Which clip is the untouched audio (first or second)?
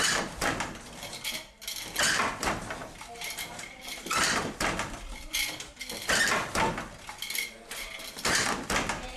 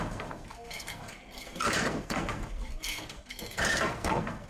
first